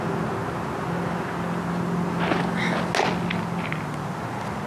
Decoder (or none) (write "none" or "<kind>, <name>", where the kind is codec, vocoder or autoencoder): none